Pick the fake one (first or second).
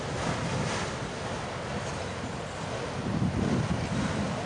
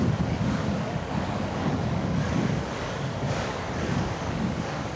second